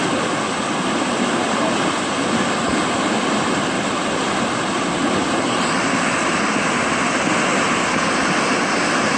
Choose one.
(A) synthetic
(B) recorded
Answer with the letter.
B